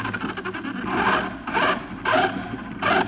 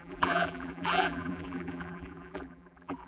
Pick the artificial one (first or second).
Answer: second